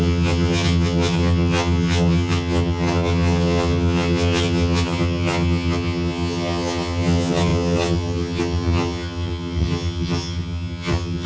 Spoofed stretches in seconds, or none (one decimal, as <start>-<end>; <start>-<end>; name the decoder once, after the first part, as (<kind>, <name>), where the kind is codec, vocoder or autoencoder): 0.0-11.3 (vocoder, HiFi-GAN)